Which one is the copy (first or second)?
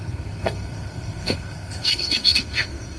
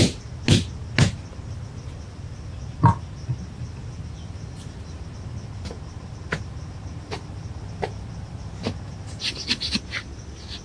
first